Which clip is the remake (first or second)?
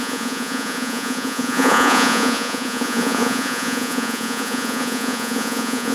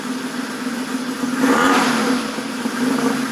first